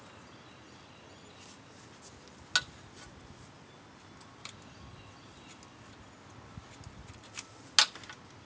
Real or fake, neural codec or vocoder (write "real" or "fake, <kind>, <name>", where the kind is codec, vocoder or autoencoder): real